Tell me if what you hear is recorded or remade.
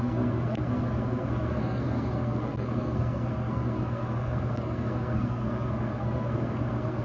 remade